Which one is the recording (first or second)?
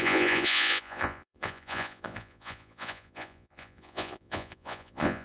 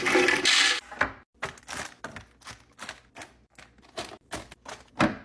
second